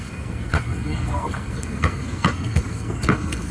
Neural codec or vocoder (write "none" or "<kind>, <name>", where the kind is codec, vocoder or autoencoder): codec, SNAC